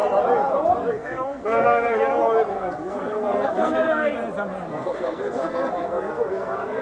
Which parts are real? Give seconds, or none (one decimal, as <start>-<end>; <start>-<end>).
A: 0.0-0.9; 2.0-2.5; 4.1-4.7